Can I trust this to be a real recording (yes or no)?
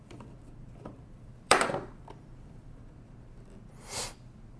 no